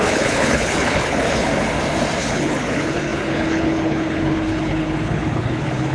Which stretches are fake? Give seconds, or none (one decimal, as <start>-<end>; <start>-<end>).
0.0-1.5; 2.2-5.9